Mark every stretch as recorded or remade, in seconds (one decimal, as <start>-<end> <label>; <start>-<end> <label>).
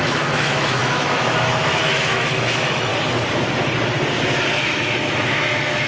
0.0-2.9 remade; 2.9-4.6 recorded; 4.6-5.9 remade